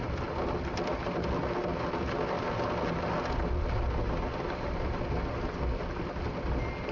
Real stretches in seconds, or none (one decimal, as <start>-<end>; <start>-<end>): 0.0-6.9